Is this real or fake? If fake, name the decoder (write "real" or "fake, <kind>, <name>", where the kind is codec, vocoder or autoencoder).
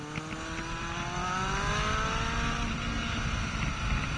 real